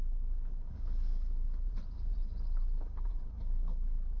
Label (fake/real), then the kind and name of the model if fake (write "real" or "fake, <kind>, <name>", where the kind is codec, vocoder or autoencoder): fake, codec, HILCodec